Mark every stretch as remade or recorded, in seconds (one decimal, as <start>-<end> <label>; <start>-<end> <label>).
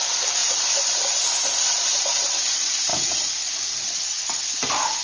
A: 0.0-5.0 recorded